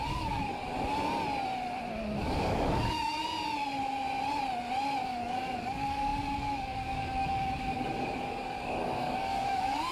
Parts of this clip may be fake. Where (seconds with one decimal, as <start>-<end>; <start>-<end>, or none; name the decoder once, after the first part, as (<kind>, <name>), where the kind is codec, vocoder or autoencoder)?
0.0-0.7 (codec, DAC); 2.2-3.2; 5.0-9.9